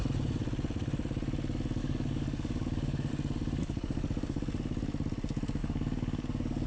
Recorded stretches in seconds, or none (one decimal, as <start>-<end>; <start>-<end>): 0.0-1.8; 3.1-3.6; 4.4-5.6